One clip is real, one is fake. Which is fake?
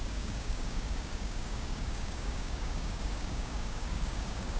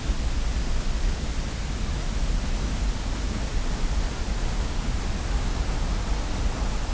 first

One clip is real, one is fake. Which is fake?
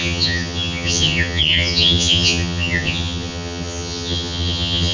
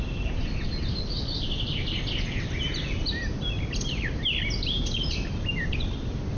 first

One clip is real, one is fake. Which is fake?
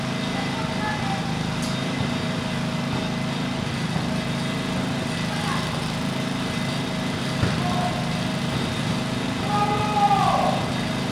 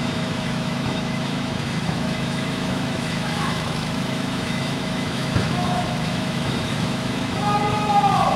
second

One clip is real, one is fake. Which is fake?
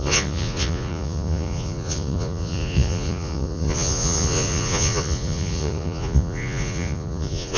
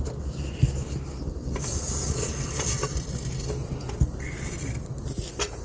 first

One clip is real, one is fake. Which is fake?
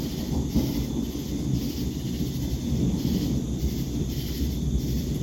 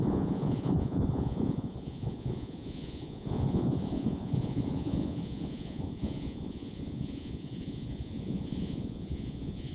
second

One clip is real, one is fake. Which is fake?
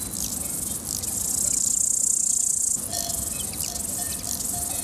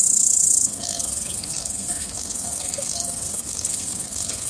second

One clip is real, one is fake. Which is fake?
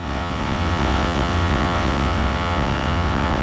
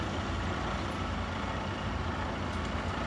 first